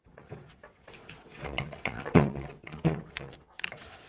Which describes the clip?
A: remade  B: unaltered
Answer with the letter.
A